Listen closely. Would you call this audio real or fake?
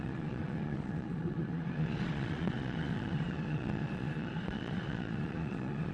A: fake